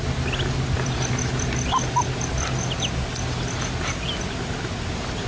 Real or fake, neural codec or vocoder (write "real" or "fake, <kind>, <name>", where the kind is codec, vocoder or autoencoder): real